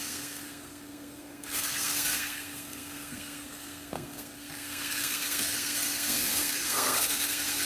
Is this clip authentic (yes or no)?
no